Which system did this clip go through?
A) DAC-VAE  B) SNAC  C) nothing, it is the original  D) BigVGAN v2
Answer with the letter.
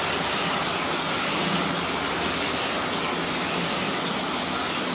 C